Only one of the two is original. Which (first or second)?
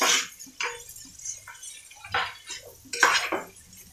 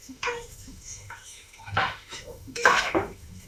first